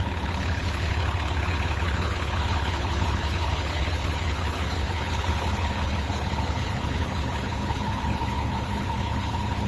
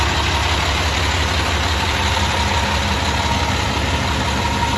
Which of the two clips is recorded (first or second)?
second